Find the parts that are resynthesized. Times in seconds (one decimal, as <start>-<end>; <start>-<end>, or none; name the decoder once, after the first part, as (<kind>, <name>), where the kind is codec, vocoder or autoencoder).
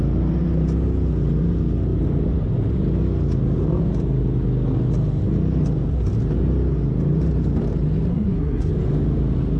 8.1-8.7 (codec, SNAC)